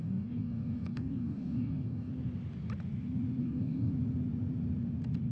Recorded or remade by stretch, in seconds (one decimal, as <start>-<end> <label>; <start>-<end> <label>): 0.0-2.1 remade; 2.1-3.4 recorded; 3.4-3.9 remade; 3.9-5.3 recorded